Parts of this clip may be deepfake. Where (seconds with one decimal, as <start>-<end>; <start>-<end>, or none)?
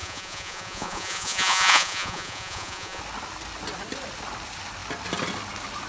0.0-3.0